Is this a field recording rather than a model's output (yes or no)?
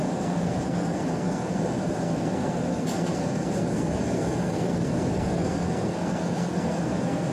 no